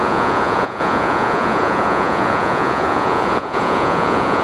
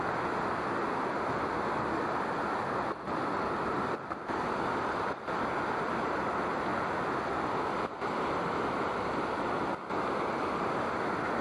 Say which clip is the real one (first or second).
second